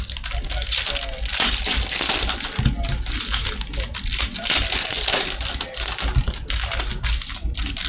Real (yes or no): yes